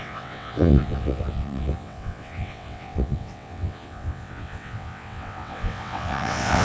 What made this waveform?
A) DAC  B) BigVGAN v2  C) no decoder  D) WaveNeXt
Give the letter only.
D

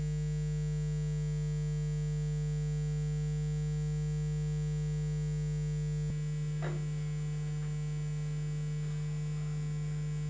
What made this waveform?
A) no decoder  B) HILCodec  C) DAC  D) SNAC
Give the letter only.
A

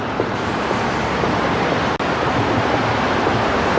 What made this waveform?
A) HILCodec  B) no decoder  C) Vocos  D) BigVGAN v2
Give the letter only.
B